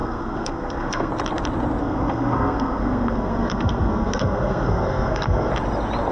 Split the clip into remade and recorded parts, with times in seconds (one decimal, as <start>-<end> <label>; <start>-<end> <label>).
0.0-1.1 remade; 1.1-1.8 recorded; 1.8-5.5 remade; 5.5-6.1 recorded